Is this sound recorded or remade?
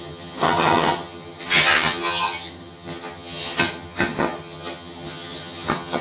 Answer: remade